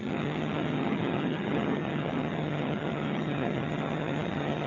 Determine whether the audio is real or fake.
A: fake